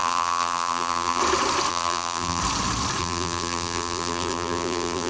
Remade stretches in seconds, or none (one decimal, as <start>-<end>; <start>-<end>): 0.0-1.2; 1.7-2.4; 3.0-5.1